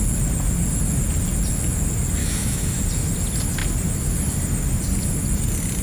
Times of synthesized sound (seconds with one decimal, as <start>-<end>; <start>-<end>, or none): 2.2-2.8